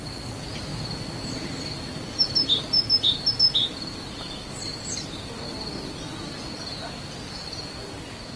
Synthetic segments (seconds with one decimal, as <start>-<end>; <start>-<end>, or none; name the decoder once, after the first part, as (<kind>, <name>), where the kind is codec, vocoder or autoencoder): none